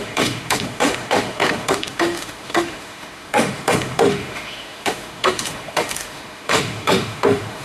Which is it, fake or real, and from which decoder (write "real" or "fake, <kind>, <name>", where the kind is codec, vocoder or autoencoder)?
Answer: fake, autoencoder, DAC-VAE